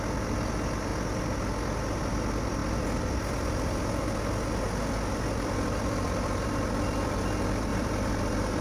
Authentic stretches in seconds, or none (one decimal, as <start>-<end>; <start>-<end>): 0.9-2.0; 2.6-5.1